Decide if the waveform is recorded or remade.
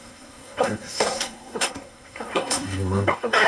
remade